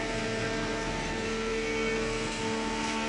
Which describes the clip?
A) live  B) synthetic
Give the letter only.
B